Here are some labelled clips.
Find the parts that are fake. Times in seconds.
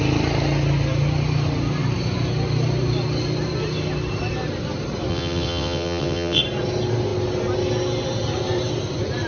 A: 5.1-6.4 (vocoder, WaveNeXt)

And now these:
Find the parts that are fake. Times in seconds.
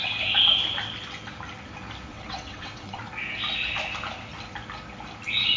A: 2.1-3.0 (vocoder, WaveNeXt)